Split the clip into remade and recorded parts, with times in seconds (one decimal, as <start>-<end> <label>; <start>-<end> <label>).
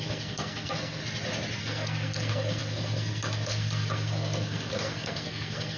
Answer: 0.0-1.0 remade; 1.0-1.6 recorded; 1.6-5.8 remade